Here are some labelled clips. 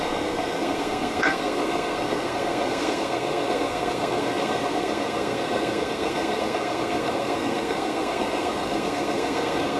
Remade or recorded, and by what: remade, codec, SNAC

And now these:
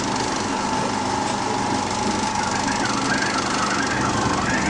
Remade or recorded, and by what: recorded